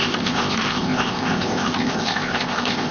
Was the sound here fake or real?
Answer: fake